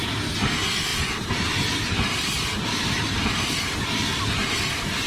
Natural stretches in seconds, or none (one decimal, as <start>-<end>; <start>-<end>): 0.0-5.1